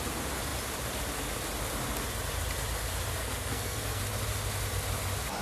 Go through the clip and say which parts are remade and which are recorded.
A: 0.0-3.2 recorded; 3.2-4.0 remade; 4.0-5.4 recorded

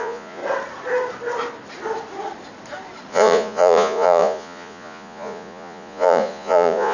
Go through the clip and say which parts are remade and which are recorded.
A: 0.0-0.4 remade; 0.4-3.1 recorded; 3.1-6.9 remade

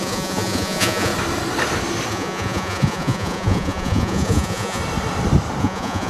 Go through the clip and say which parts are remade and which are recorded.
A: 0.0-1.1 remade; 1.1-2.1 recorded; 2.1-4.8 remade; 4.8-5.6 recorded; 5.6-6.1 remade

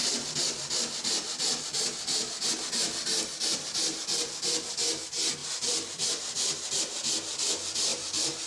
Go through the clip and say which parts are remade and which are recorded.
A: 0.0-2.5 remade; 2.5-5.4 recorded; 5.4-6.8 remade; 6.8-7.9 recorded; 7.9-8.5 remade

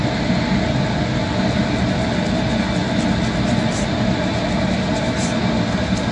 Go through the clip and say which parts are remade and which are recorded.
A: 0.0-3.7 recorded; 3.7-6.1 remade

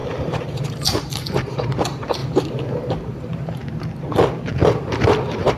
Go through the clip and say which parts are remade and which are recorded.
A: 0.0-3.6 remade; 3.6-4.7 recorded; 4.7-5.6 remade